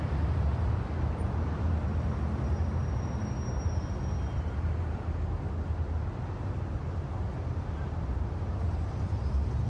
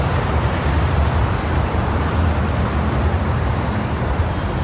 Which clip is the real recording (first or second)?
first